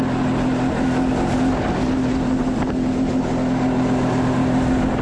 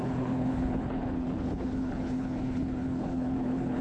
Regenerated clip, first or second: second